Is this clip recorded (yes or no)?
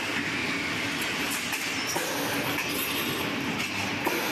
yes